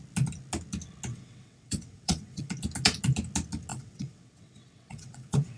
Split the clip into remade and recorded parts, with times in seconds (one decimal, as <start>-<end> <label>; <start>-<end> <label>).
0.0-1.1 recorded; 1.1-2.5 remade; 2.5-3.7 recorded; 3.7-5.6 remade